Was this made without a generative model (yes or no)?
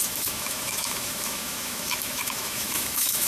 no